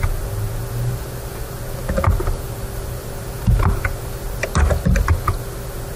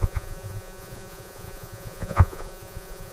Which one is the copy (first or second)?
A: second